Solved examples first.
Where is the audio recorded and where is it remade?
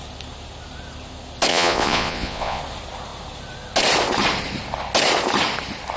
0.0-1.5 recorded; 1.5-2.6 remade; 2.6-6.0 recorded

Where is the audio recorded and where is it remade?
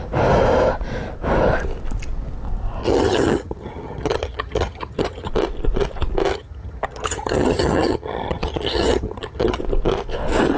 0.0-2.8 recorded; 2.8-5.3 remade; 5.3-6.3 recorded; 6.3-9.6 remade; 9.6-10.6 recorded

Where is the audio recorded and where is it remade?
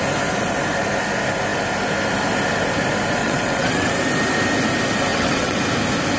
0.0-3.2 recorded; 3.2-3.9 remade; 3.9-5.1 recorded; 5.1-5.6 remade; 5.6-6.2 recorded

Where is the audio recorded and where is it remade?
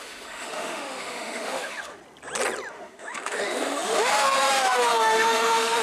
0.0-2.0 remade; 2.0-2.7 recorded; 2.7-5.8 remade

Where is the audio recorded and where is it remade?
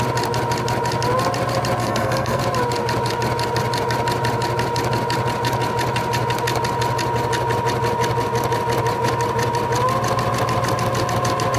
0.0-1.8 recorded; 1.8-2.4 remade; 2.4-11.6 recorded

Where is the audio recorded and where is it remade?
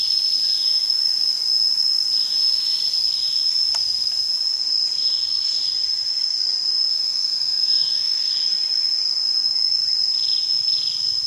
0.0-6.9 recorded; 6.9-8.3 remade; 8.3-11.3 recorded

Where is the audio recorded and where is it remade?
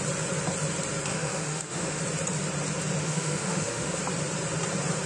0.0-1.1 recorded; 1.1-2.0 remade; 2.0-3.0 recorded; 3.0-4.0 remade; 4.0-5.1 recorded